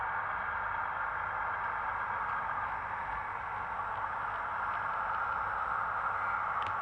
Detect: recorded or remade recorded